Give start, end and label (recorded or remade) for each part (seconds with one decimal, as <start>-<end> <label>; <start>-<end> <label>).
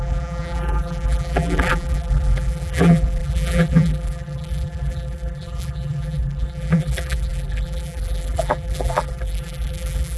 0.0-10.2 remade